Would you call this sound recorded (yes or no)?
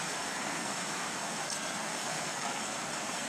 no